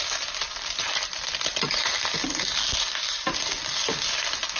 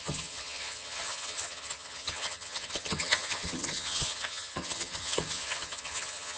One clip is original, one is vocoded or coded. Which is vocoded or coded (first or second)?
second